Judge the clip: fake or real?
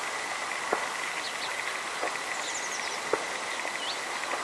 real